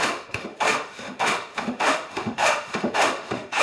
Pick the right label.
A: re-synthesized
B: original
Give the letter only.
A